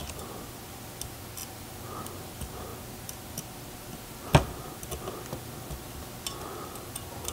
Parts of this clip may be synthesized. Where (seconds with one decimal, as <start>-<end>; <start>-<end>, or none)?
none